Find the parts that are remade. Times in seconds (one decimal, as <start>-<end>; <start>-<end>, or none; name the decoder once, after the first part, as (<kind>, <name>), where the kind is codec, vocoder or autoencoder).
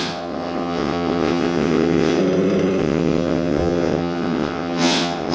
0.0-2.2 (vocoder, WaveNeXt); 2.8-5.3